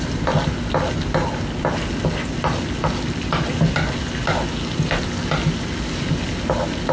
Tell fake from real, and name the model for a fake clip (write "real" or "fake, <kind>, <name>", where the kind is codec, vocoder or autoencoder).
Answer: real